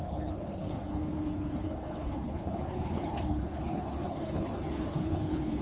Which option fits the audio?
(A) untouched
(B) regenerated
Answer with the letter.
B